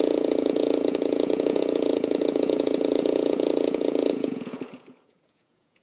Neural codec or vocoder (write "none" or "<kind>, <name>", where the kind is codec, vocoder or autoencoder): vocoder, Vocos